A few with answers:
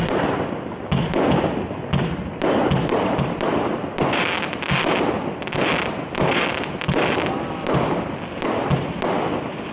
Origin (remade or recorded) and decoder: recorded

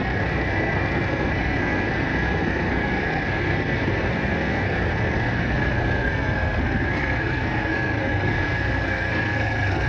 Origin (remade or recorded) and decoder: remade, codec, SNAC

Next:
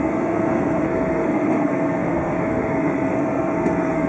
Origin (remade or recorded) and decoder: remade, codec, SNAC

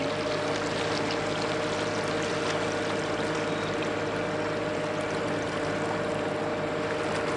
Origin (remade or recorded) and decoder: recorded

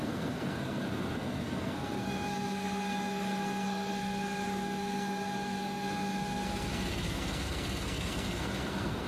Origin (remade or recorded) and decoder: remade, codec, SNAC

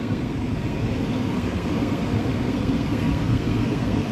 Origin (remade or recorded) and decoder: remade, codec, SNAC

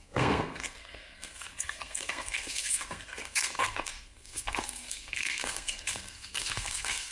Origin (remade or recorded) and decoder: remade, codec, SNAC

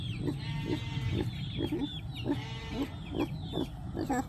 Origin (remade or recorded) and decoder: recorded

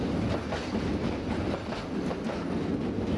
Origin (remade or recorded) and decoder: recorded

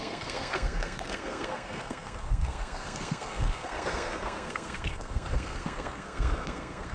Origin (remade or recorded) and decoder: remade, codec, SNAC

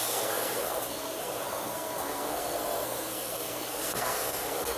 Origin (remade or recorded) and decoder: remade, codec, SNAC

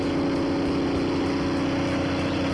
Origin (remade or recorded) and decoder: recorded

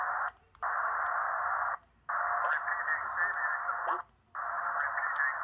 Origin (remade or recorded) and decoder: recorded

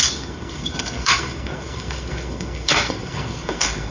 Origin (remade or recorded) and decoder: remade, codec, SNAC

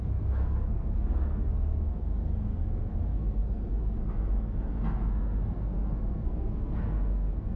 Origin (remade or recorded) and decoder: remade, codec, SNAC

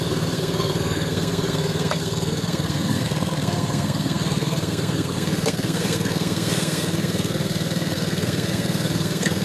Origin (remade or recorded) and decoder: remade, codec, SNAC